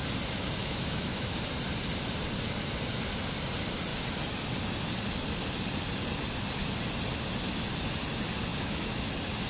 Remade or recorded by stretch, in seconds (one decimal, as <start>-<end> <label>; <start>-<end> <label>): 0.0-0.6 recorded; 0.6-1.4 remade; 1.4-8.5 recorded; 8.5-9.1 remade; 9.1-9.5 recorded